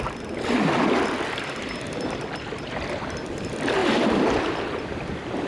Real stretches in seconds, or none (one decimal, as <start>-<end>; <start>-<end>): 3.8-4.8